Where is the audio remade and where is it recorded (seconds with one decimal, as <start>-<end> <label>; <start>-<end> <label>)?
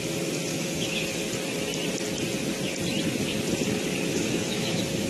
0.0-0.5 recorded; 0.5-1.1 remade; 1.1-4.1 recorded; 4.1-5.1 remade